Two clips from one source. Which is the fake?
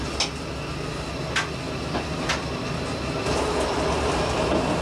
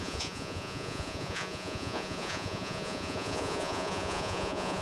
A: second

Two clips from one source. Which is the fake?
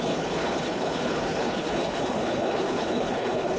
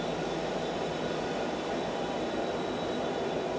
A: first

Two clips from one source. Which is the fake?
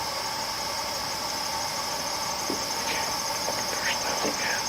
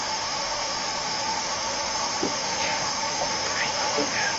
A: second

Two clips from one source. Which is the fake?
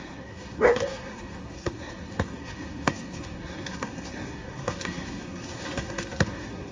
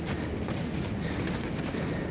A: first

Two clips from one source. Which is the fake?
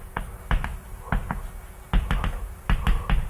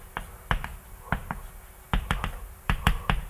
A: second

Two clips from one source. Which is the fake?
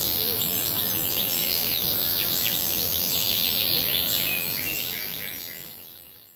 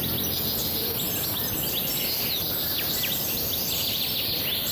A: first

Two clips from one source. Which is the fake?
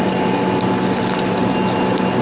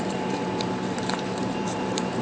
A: second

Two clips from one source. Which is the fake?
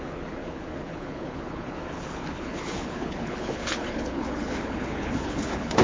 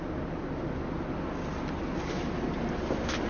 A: first